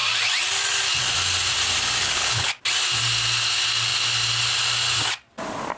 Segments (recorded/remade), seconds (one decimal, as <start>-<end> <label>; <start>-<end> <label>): 0.0-2.0 recorded; 2.0-2.5 remade; 2.5-5.8 recorded